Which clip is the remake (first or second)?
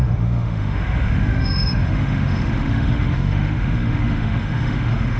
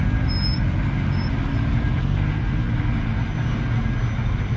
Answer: first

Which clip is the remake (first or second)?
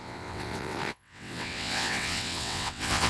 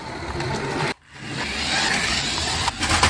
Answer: first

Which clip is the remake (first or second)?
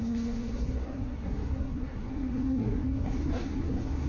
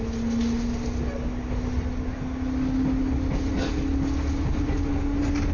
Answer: first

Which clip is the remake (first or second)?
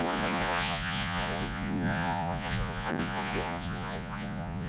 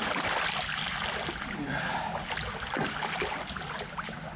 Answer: first